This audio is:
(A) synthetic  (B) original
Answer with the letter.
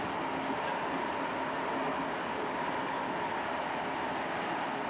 B